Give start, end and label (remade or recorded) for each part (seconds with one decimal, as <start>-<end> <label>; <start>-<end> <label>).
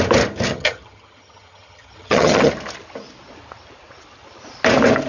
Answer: 0.0-0.5 recorded; 0.5-2.5 remade; 2.5-5.1 recorded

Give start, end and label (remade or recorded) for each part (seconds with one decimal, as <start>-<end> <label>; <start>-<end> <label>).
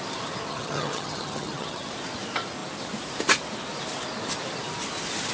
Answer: 0.0-0.5 recorded; 0.5-1.9 remade; 1.9-5.3 recorded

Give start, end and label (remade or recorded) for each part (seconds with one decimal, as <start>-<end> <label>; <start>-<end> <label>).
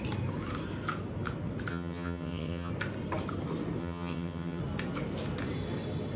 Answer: 0.0-1.7 recorded; 1.7-2.7 remade; 2.7-3.8 recorded; 3.8-4.6 remade; 4.6-6.2 recorded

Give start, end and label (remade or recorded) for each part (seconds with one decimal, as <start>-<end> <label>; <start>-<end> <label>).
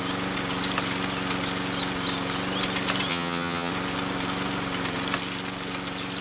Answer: 0.0-3.1 recorded; 3.1-3.7 remade; 3.7-6.2 recorded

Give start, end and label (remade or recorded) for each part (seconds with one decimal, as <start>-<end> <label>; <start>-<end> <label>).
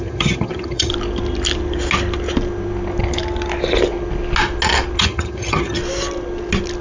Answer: 0.0-0.9 remade; 0.9-5.0 recorded; 5.0-5.8 remade; 5.8-6.8 recorded